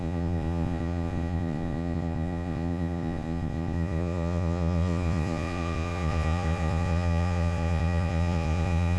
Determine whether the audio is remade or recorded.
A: remade